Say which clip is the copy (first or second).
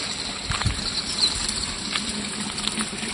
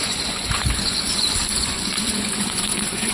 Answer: second